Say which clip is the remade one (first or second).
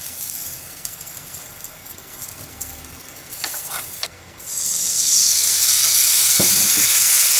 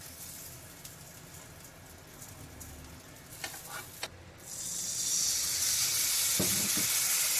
first